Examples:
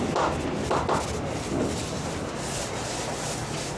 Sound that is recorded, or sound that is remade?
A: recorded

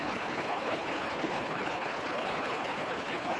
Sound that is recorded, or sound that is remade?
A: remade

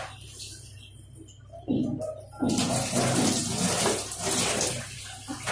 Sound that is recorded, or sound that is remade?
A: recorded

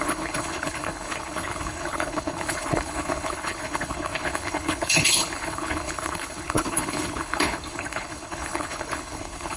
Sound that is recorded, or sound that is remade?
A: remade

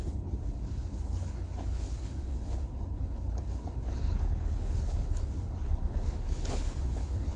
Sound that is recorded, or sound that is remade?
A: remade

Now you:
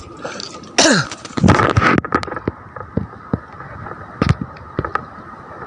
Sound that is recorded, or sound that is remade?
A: recorded